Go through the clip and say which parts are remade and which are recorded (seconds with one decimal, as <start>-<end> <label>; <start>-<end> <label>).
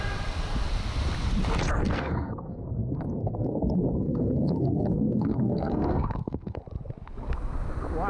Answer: 0.0-1.7 recorded; 1.7-6.6 remade; 6.6-8.1 recorded